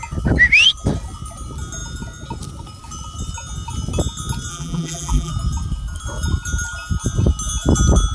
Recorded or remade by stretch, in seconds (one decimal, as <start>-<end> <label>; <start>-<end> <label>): 0.0-4.5 recorded; 4.5-5.3 remade; 5.3-8.1 recorded